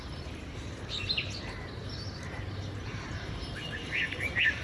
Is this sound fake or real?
fake